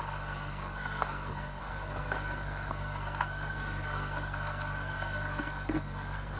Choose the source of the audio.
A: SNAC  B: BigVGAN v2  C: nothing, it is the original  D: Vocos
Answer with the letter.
A